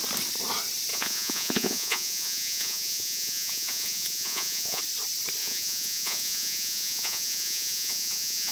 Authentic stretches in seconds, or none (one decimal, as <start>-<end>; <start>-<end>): 0.0-0.9; 4.8-5.4

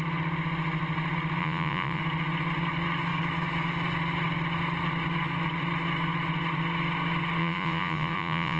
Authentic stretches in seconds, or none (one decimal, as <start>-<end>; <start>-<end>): 0.0-1.4; 2.0-7.4

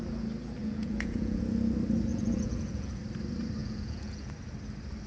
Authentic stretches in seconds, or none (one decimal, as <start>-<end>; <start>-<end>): 0.0-0.6; 1.4-2.1; 3.0-3.6; 4.3-5.1

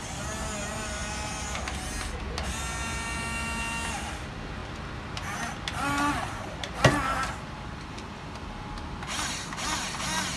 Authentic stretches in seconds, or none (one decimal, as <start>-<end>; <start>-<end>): 0.0-10.4

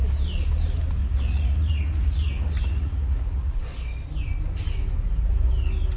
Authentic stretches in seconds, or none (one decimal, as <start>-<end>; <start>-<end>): 0.0-1.0; 3.6-6.0

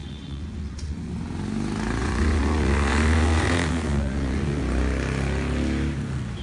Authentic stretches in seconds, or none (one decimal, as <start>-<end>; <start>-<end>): 1.1-2.0; 4.6-6.4